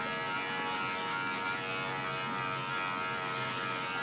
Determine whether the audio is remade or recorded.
recorded